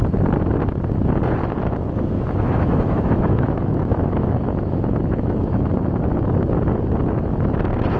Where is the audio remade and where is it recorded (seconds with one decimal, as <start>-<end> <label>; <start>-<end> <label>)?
0.0-1.6 recorded; 1.6-5.7 remade; 5.7-8.0 recorded

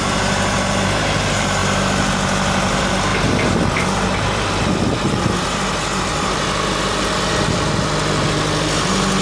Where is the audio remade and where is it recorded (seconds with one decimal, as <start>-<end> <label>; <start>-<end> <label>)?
0.0-9.2 recorded

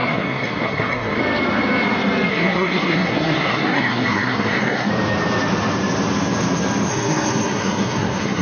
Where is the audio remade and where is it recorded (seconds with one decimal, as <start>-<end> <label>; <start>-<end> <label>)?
0.0-1.2 remade; 1.2-2.3 recorded; 2.3-4.9 remade; 4.9-6.9 recorded; 6.9-8.4 remade

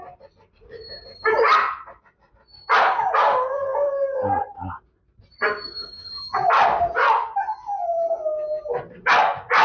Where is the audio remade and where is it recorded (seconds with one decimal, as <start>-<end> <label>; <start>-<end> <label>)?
0.0-9.6 recorded

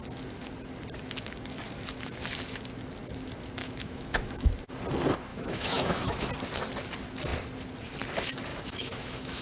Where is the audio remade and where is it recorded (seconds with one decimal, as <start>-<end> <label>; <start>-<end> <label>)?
0.0-3.6 recorded; 3.6-4.5 remade; 4.5-5.3 recorded; 5.3-6.3 remade; 6.3-8.5 recorded; 8.5-9.4 remade

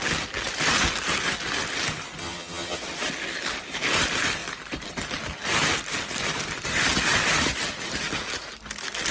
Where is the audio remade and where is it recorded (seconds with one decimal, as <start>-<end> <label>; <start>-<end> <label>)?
0.0-2.2 recorded; 2.2-2.8 remade; 2.8-9.1 recorded

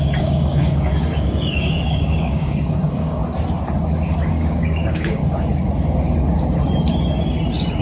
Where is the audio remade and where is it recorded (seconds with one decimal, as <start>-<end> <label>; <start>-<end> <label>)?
0.0-3.2 remade; 3.2-4.3 recorded; 4.3-5.2 remade; 5.2-7.8 recorded